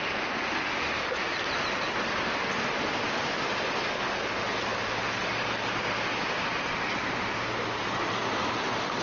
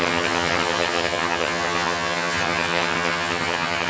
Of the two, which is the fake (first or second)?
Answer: second